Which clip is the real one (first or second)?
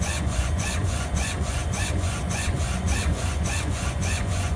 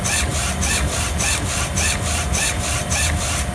second